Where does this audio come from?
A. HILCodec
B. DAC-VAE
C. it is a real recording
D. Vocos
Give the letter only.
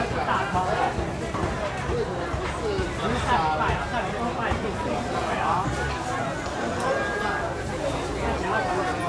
C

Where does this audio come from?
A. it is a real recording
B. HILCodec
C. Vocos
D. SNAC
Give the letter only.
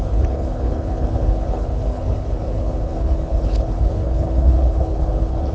B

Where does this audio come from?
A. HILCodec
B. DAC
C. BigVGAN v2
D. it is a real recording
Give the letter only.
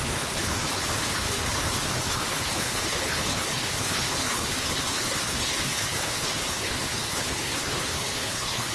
A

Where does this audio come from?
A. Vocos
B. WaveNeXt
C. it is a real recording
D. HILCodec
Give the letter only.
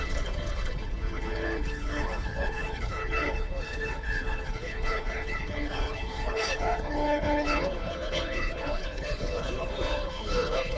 D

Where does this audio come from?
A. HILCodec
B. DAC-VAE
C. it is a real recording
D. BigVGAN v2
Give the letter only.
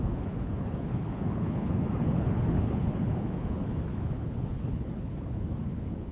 A